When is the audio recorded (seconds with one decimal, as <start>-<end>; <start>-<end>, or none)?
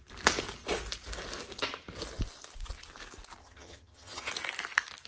0.0-3.4; 4.3-5.1